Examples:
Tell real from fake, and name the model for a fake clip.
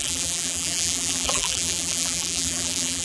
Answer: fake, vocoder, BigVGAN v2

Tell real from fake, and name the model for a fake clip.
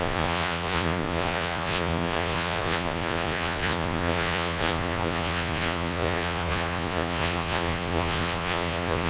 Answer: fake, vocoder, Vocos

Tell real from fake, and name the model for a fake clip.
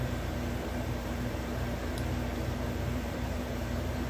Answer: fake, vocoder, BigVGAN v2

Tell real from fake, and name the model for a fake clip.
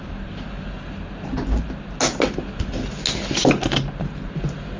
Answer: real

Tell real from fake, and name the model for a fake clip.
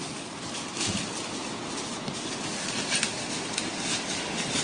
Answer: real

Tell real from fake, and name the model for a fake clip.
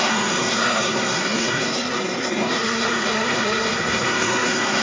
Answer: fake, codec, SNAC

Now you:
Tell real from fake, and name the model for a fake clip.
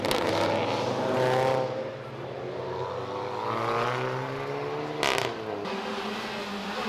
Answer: real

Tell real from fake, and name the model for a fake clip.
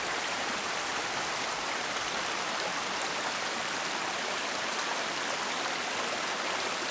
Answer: real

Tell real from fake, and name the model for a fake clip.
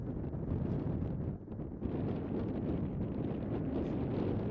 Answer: real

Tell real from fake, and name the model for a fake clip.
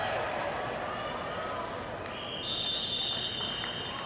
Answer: real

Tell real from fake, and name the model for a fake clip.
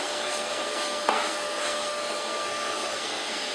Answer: fake, codec, SNAC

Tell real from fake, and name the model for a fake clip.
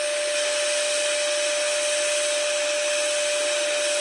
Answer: real